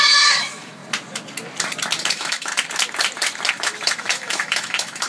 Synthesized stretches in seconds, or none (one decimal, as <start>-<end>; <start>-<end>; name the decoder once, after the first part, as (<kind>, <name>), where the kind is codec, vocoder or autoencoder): 0.0-0.8 (autoencoder, DAC-VAE); 2.1-2.5; 3.5-5.1